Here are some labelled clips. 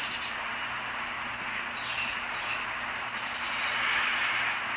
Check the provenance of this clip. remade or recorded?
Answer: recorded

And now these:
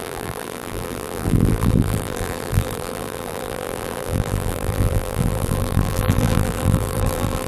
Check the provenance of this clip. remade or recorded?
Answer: remade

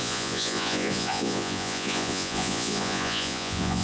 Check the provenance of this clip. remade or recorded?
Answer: remade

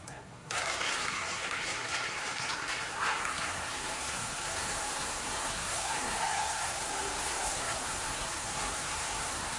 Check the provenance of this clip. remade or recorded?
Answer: remade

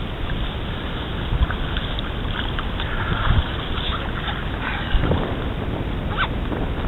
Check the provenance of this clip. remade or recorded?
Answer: recorded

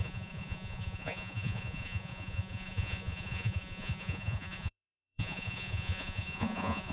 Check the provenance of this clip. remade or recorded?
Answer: remade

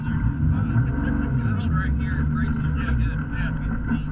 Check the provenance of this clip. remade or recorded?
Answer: recorded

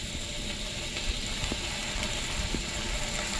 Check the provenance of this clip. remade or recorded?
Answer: recorded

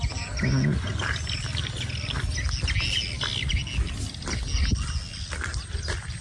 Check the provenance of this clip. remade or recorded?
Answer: recorded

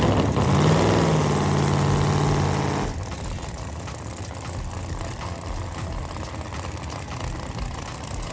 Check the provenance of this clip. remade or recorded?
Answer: recorded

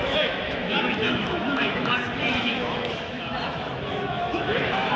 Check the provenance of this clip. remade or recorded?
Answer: remade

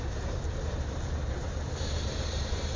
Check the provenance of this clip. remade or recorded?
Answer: remade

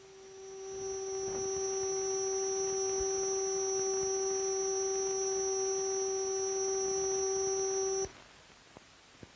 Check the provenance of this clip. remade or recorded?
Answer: recorded